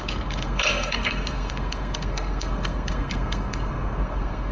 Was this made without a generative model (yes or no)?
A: no